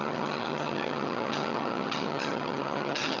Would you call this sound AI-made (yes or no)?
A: yes